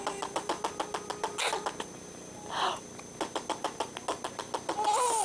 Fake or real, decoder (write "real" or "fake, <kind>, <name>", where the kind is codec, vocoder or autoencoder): real